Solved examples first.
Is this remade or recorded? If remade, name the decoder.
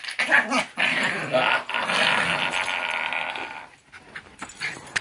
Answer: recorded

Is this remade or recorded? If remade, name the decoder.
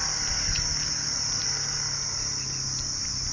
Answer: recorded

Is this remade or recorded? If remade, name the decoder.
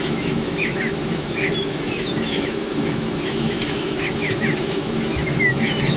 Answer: remade, autoencoder, DAC-VAE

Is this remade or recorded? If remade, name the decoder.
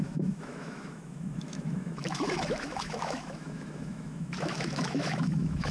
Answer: remade, autoencoder, DAC-VAE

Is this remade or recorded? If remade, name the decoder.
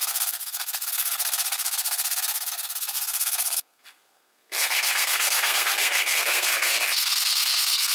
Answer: remade, codec, SNAC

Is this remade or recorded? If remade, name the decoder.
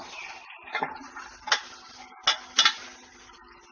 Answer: recorded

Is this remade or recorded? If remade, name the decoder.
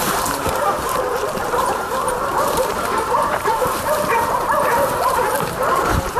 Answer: remade, vocoder, BigVGAN v2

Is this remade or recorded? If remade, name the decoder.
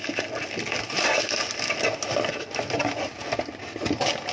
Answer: recorded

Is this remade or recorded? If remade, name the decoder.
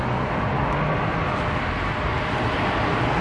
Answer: recorded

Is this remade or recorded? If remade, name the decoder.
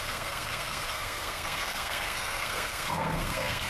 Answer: remade, codec, SNAC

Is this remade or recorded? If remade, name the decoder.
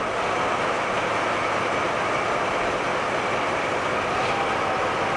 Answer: recorded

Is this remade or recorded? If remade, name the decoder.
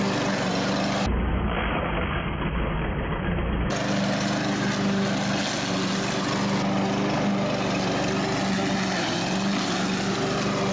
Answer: recorded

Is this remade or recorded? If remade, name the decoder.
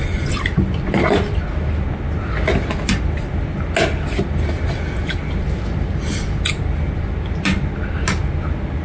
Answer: recorded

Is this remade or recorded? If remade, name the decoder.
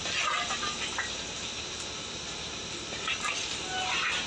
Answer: recorded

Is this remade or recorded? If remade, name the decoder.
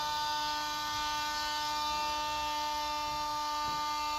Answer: recorded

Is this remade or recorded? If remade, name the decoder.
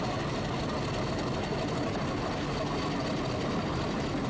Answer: recorded